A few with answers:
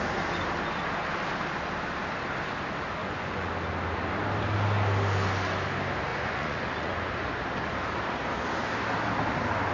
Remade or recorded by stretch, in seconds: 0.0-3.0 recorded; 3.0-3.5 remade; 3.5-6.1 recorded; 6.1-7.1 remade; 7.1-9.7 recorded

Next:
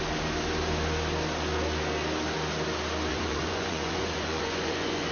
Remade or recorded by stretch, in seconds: 0.0-3.1 recorded; 3.1-5.1 remade